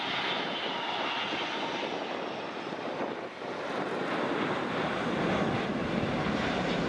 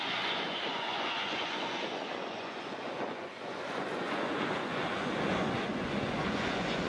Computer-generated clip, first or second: second